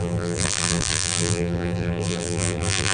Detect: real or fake fake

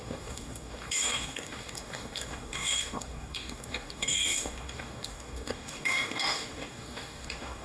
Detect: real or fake fake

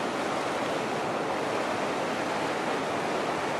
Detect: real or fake real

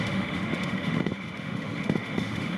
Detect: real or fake fake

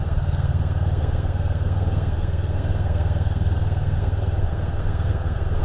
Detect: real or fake fake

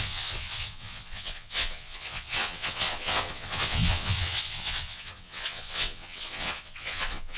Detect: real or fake fake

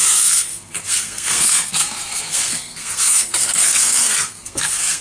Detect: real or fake fake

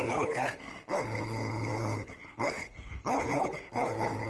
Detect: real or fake fake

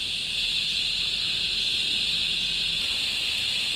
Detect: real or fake real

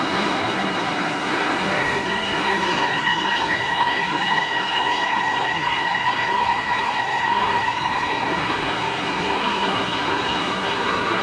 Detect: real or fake fake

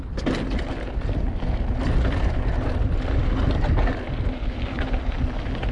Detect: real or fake real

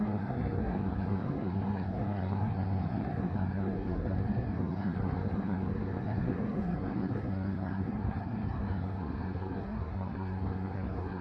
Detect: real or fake fake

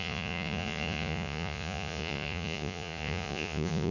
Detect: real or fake fake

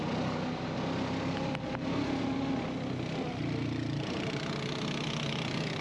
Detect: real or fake real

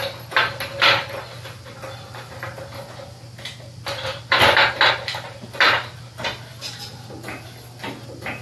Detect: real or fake real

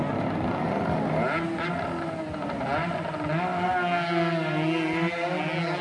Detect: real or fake real